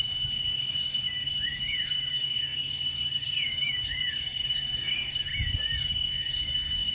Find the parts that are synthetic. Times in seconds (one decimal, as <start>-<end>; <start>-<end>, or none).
0.0-5.3; 5.8-6.9